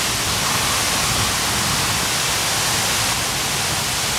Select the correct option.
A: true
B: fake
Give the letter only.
A